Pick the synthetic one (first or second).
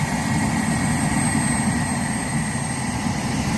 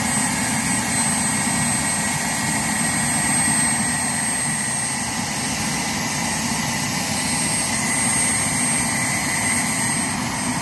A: first